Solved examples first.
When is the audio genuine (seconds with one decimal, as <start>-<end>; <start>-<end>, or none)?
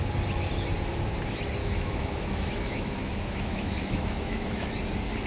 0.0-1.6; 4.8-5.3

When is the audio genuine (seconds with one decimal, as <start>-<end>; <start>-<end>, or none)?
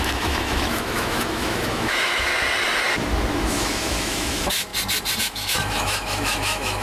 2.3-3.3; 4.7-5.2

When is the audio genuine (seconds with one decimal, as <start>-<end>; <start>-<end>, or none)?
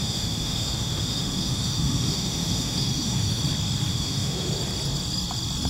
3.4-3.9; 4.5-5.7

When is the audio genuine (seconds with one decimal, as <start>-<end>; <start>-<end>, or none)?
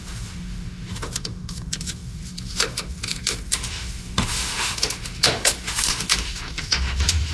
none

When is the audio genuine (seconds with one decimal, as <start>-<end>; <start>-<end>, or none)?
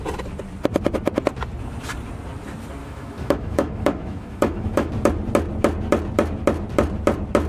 0.0-2.8; 4.9-7.5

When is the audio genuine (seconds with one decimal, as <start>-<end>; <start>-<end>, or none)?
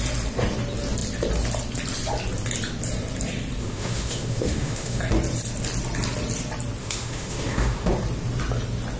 0.0-3.6; 5.0-6.8; 7.9-9.0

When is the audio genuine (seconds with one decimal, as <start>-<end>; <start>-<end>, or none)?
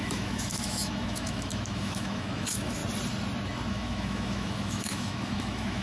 2.8-3.7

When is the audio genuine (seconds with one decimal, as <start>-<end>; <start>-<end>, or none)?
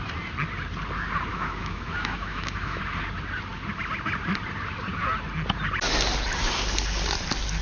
0.0-1.3; 2.8-7.6